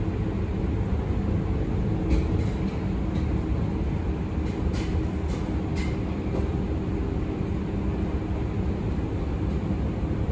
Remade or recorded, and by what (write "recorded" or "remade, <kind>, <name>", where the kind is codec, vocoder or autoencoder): recorded